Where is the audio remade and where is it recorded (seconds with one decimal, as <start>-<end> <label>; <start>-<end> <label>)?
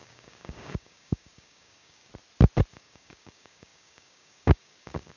0.0-2.1 remade; 2.1-2.7 recorded; 2.7-5.2 remade